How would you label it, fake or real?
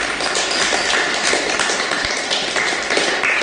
fake